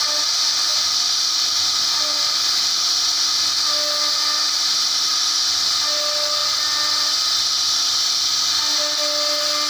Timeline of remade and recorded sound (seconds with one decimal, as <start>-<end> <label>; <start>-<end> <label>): 0.0-0.7 recorded; 0.7-2.6 remade; 2.6-9.7 recorded